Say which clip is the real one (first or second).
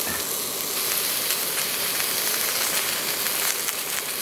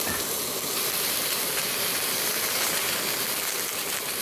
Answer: first